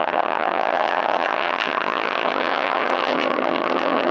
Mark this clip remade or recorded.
remade